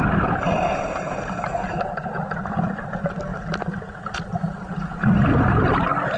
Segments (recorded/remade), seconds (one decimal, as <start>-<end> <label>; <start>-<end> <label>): 0.0-6.2 recorded

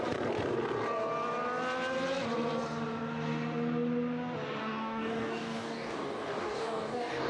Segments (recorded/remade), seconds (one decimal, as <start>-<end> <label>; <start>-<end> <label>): 0.0-4.6 recorded; 4.6-7.3 remade

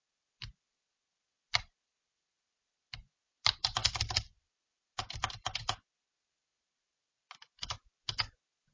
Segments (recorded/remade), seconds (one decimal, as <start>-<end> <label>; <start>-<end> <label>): 0.0-8.7 recorded